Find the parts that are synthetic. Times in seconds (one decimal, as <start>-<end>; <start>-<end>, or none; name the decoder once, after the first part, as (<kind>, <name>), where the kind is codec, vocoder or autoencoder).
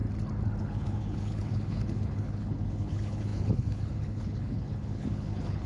0.6-5.7 (codec, HILCodec)